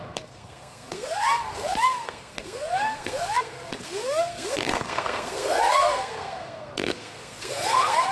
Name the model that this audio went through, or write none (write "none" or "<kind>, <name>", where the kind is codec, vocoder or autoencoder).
codec, SNAC